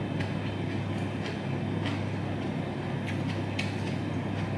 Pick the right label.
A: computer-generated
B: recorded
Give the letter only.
B